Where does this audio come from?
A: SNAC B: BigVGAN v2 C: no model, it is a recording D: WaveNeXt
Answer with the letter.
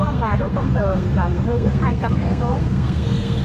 A